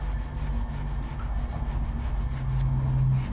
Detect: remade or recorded recorded